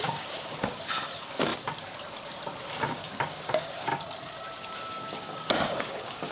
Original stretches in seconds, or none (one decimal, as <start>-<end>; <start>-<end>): 1.5-2.7; 3.9-4.7